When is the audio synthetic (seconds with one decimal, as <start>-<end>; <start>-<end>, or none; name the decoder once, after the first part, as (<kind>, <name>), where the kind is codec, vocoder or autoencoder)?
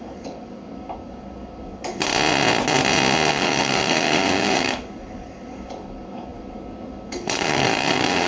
0.0-2.1 (codec, DAC); 3.3-8.3